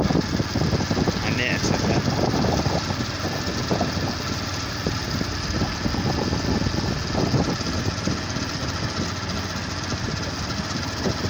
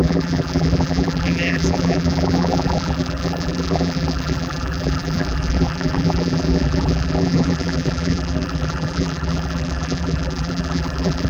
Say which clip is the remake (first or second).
second